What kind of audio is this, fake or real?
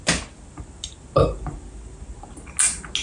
real